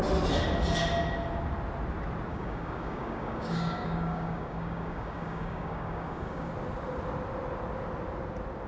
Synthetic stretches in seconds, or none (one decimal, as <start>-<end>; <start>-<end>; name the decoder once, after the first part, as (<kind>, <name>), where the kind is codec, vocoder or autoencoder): 2.3-6.5 (codec, DAC)